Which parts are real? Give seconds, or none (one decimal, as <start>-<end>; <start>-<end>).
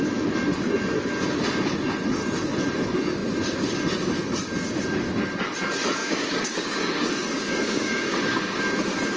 0.0-6.0; 8.6-9.2